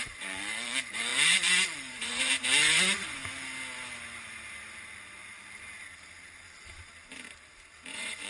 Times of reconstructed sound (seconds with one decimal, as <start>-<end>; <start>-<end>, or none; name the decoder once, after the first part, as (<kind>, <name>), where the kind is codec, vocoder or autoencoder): 0.0-3.2 (vocoder, Vocos); 7.9-8.3